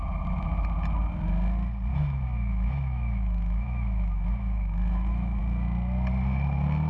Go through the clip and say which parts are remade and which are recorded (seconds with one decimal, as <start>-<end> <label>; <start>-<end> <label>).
0.0-1.9 recorded; 1.9-5.4 remade; 5.4-6.9 recorded